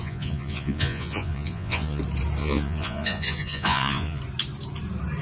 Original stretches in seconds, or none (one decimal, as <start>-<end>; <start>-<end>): 2.0-2.4; 4.2-5.2